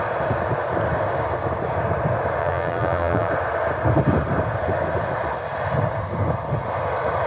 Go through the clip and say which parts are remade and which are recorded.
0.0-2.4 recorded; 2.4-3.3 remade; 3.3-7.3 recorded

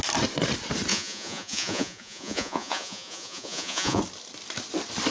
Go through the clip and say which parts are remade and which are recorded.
0.0-0.9 recorded; 0.9-4.0 remade; 4.0-5.1 recorded